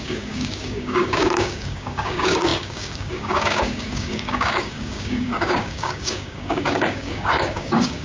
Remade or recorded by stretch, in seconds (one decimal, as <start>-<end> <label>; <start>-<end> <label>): 0.0-8.0 remade